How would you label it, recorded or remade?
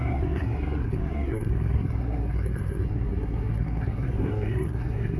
remade